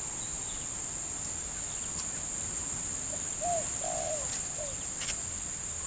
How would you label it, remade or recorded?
recorded